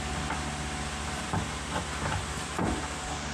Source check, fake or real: real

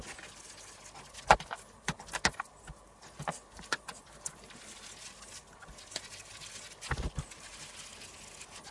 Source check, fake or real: real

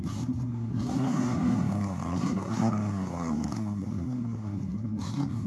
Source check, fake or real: fake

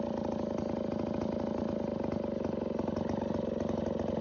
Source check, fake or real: real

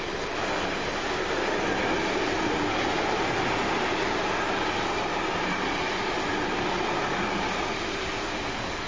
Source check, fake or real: real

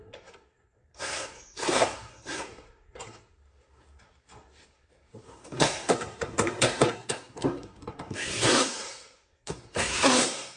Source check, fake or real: fake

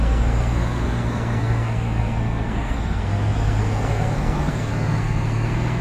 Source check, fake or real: fake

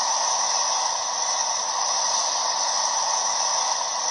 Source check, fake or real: real